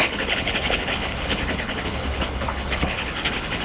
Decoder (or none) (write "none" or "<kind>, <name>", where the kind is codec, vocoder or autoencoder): codec, HILCodec